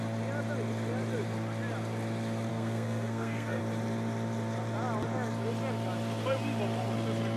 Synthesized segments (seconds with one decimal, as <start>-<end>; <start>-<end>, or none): 2.5-3.6